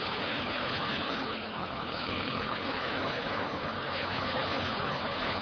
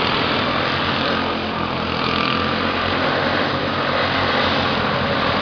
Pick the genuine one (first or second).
second